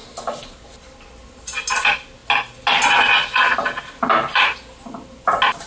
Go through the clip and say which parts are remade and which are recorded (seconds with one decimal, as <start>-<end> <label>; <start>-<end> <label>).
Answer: 0.0-5.7 recorded